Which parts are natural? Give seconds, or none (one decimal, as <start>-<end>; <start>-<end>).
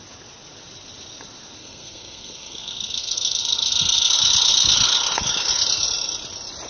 0.0-1.6; 4.1-6.7